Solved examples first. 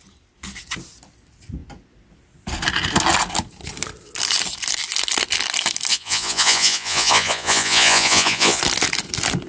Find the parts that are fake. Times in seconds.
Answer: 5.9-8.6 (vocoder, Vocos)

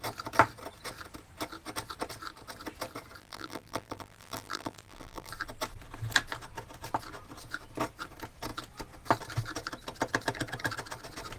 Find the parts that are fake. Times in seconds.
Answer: 3.2-5.3 (vocoder, BigVGAN v2)

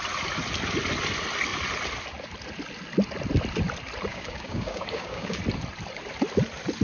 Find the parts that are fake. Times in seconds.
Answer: 4.1-5.4 (codec, DAC)

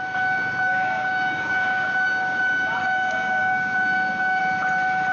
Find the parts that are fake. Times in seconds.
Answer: 0.7-2.4 (codec, DAC); 2.8-4.4

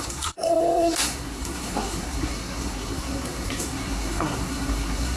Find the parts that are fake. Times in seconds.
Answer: 0.0-5.2 (codec, SNAC)

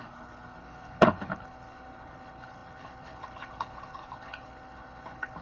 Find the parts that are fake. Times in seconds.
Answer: 0.0-5.4 (codec, HILCodec)

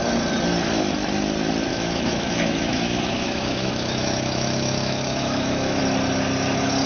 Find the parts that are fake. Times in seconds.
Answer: 1.7-5.8 (autoencoder, DAC-VAE)